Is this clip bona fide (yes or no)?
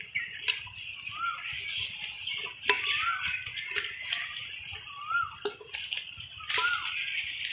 yes